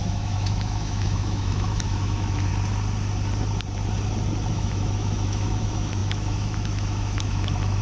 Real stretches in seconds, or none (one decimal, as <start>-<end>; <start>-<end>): 2.5-4.5